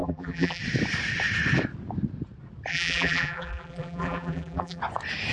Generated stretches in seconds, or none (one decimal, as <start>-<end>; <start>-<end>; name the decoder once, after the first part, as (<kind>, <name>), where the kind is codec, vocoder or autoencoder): 0.0-0.6 (vocoder, BigVGAN v2); 2.7-4.8